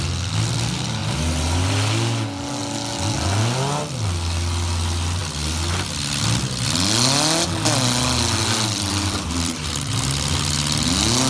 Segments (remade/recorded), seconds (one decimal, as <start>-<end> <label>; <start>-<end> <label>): 0.0-8.4 recorded; 8.4-9.7 remade; 9.7-11.3 recorded